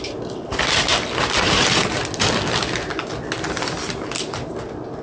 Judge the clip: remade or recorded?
recorded